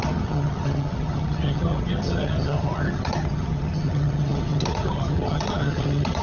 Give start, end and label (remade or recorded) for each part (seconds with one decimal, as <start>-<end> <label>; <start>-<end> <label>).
0.0-6.2 remade